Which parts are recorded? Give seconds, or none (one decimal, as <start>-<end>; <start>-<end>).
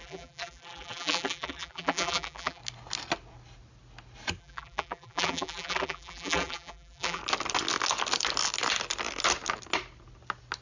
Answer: 2.6-4.4; 7.2-10.6